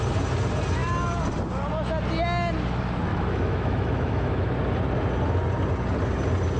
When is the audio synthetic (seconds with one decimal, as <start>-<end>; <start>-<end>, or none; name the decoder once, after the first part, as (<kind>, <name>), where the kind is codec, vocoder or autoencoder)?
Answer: 3.1-4.5 (autoencoder, DAC-VAE)